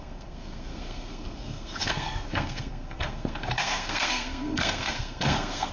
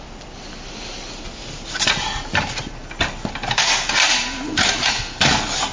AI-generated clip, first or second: first